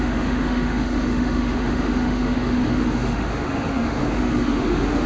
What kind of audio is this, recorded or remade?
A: remade